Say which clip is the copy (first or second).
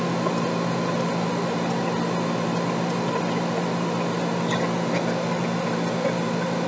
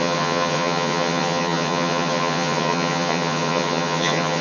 second